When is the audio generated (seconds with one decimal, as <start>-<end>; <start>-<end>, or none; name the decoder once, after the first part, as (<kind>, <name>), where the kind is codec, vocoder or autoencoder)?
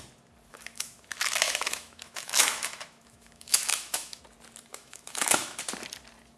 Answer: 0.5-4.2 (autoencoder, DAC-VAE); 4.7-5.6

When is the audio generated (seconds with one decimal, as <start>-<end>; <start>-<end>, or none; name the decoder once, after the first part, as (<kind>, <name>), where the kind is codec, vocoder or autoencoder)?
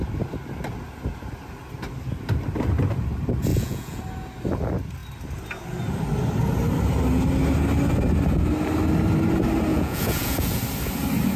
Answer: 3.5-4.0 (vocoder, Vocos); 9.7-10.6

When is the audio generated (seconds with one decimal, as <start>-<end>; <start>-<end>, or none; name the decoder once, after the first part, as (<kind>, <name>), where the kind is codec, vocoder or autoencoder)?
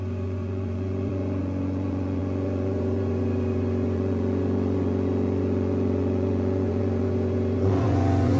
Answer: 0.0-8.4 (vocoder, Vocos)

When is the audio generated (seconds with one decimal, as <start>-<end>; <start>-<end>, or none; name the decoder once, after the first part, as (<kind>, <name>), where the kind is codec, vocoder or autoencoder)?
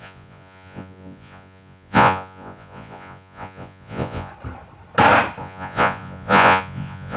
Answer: 0.0-4.3 (vocoder, Vocos); 5.4-7.2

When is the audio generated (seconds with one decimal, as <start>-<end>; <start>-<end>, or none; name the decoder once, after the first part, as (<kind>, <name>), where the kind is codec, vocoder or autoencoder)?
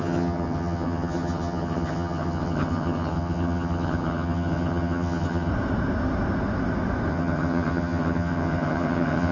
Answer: 0.0-5.5 (vocoder, HiFi-GAN); 7.1-9.3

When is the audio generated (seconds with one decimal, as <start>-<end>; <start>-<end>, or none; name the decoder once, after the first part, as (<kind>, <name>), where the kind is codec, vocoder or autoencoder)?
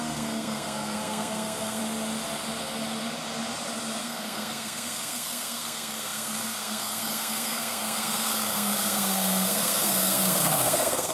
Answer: 0.0-1.8 (codec, SNAC); 4.0-11.1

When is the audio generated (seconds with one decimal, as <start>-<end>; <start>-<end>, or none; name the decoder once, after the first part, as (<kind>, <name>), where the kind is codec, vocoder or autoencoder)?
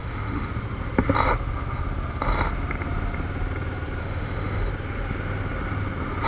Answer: 0.0-0.5 (autoencoder, DAC-VAE); 4.0-4.7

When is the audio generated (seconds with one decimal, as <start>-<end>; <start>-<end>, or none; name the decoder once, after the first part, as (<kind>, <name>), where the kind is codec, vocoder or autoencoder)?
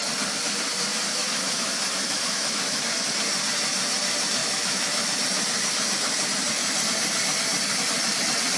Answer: 0.9-2.8 (autoencoder, DAC-VAE); 4.4-5.0